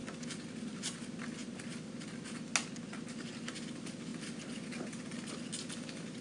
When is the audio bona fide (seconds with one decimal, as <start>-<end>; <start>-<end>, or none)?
0.0-6.2